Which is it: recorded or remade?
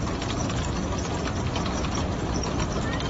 recorded